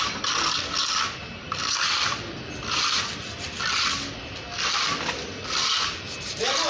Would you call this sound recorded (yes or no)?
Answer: yes